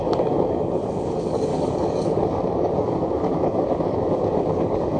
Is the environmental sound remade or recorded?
remade